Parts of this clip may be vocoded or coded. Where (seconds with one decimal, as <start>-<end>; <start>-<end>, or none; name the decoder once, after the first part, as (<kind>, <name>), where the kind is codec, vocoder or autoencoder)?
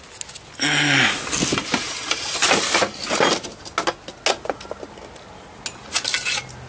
none